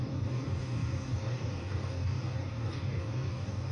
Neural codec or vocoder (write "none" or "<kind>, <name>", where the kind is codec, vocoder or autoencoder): codec, DAC